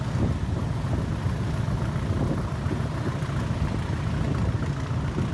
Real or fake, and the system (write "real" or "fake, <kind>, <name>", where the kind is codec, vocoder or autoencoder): real